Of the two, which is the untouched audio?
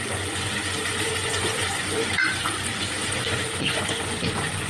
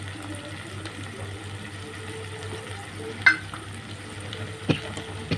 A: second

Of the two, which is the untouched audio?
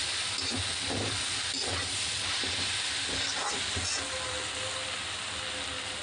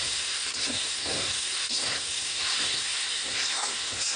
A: first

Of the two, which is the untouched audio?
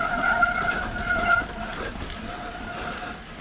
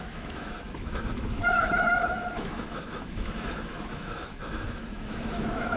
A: first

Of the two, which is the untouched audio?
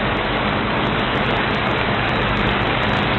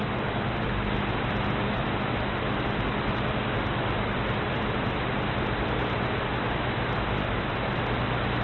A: second